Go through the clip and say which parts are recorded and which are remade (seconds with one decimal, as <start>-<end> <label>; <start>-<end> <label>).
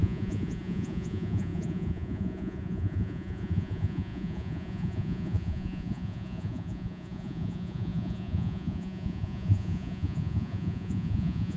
0.0-11.6 remade